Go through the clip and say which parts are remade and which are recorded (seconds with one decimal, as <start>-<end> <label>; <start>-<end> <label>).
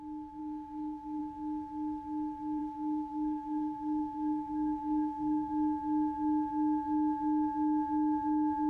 0.0-0.4 recorded; 0.4-1.2 remade; 1.2-2.6 recorded; 2.6-5.5 remade; 5.5-8.7 recorded